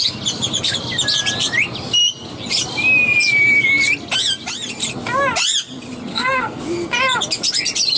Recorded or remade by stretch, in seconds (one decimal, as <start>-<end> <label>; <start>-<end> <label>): 0.0-6.1 recorded; 6.1-6.6 remade; 6.6-8.0 recorded